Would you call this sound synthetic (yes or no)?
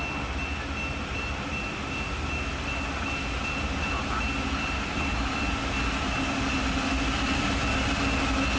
no